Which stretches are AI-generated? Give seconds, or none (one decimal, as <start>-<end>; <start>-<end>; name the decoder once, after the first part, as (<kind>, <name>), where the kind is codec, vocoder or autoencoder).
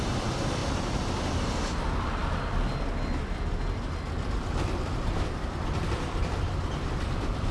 0.0-0.6 (vocoder, BigVGAN v2); 1.5-2.2; 3.2-7.5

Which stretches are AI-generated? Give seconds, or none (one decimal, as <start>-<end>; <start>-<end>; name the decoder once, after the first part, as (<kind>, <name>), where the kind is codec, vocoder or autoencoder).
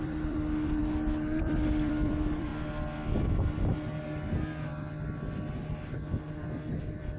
0.0-0.8 (vocoder, BigVGAN v2); 1.4-2.5; 6.8-7.2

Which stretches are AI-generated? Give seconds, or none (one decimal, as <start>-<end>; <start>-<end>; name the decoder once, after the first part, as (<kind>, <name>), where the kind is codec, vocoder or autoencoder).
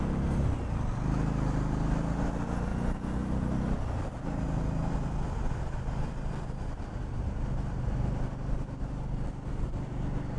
none